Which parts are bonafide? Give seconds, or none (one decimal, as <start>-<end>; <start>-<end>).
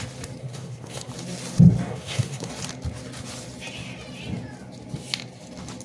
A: 0.0-0.4; 1.1-1.9; 2.5-5.8